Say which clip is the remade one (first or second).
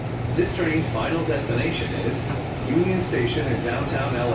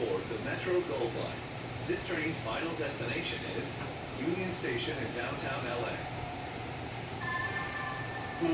second